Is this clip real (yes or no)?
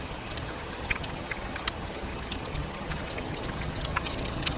no